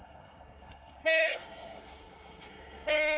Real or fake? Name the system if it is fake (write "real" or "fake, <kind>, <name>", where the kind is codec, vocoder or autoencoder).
fake, codec, SNAC